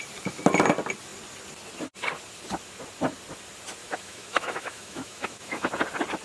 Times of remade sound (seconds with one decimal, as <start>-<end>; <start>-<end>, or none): 3.8-5.7

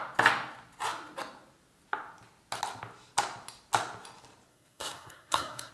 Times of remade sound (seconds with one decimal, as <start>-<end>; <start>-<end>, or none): 4.5-5.7